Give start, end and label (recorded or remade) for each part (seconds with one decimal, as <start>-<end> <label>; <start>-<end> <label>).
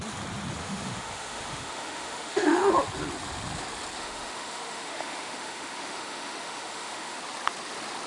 0.0-0.6 recorded; 0.6-2.7 remade; 2.7-4.0 recorded; 4.0-7.2 remade; 7.2-8.1 recorded